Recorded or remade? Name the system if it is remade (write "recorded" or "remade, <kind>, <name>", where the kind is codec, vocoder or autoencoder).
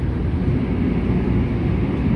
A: recorded